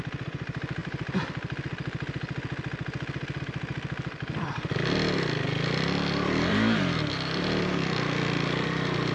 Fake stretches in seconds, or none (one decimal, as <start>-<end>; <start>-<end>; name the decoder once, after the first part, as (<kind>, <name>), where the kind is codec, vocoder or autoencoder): 0.0-9.1 (vocoder, BigVGAN v2)